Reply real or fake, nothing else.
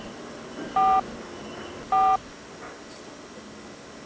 real